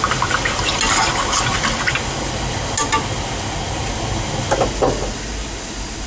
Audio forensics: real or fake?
real